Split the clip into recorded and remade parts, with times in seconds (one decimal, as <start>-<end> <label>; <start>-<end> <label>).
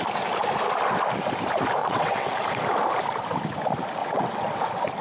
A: 0.0-1.8 recorded; 1.8-2.3 remade; 2.3-4.0 recorded; 4.0-4.6 remade; 4.6-5.0 recorded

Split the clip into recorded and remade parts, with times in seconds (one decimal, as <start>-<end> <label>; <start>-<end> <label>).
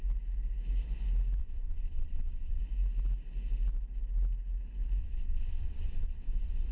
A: 0.0-1.4 recorded; 1.4-2.6 remade; 2.6-5.0 recorded; 5.0-6.7 remade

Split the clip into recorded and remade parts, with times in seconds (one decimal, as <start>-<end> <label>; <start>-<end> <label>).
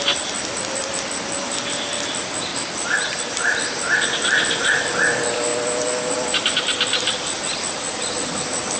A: 0.0-8.8 recorded